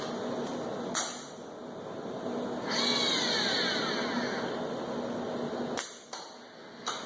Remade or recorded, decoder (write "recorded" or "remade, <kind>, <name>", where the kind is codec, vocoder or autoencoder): recorded